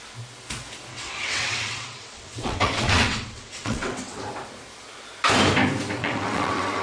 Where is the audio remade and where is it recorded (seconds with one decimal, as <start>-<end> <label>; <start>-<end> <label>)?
0.0-0.9 recorded; 0.9-4.2 remade; 4.2-6.0 recorded; 6.0-6.8 remade